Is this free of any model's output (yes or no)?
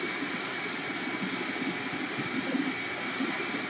no